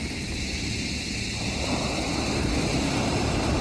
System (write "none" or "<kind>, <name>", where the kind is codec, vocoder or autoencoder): none